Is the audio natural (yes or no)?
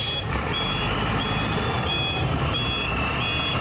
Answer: no